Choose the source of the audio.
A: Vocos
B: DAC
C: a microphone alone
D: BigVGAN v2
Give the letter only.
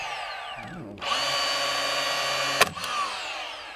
C